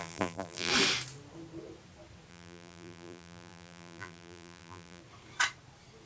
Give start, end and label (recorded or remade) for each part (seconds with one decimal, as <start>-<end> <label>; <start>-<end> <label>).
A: 0.0-0.7 remade; 0.7-2.3 recorded; 2.3-5.0 remade; 5.0-6.1 recorded